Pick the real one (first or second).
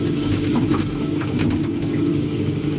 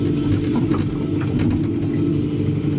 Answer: second